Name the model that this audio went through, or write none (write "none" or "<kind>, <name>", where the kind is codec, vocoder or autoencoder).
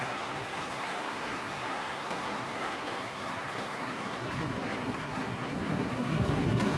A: codec, SNAC